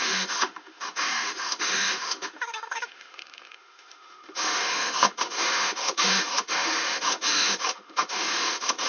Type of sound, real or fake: fake